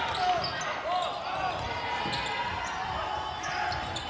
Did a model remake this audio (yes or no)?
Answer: no